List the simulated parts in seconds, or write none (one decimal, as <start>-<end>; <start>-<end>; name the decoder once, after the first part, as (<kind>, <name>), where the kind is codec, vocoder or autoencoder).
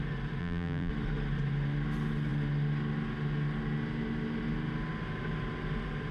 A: 0.4-0.9 (vocoder, BigVGAN v2)